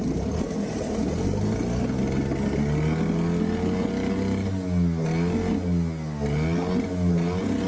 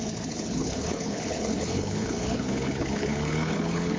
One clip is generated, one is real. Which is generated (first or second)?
second